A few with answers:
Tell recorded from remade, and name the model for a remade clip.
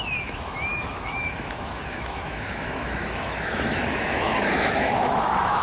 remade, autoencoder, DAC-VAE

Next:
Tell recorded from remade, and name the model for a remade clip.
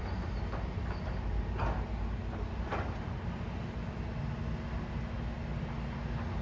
recorded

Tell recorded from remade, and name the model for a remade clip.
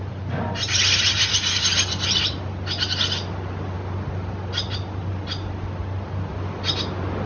recorded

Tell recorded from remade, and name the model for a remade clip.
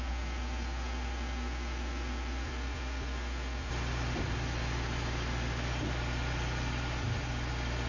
recorded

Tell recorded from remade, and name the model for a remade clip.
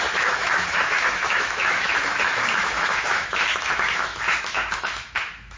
remade, autoencoder, DAC-VAE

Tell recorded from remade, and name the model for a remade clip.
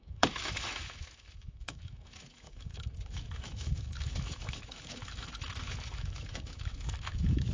remade, autoencoder, DAC-VAE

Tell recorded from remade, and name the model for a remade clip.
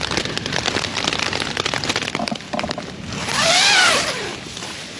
recorded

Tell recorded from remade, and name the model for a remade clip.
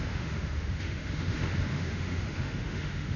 remade, autoencoder, DAC-VAE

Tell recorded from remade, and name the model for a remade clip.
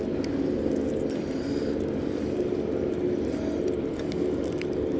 recorded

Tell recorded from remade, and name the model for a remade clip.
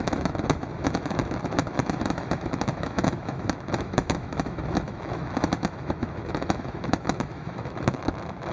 remade, autoencoder, DAC-VAE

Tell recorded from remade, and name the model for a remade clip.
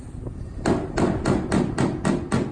recorded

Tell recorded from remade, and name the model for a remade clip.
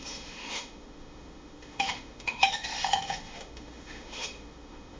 remade, autoencoder, DAC-VAE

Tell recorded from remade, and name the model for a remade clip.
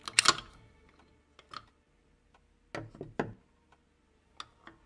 recorded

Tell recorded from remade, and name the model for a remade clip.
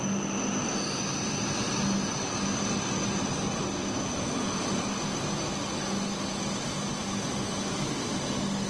recorded